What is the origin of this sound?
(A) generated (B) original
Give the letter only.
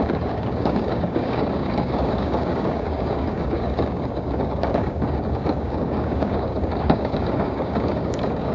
A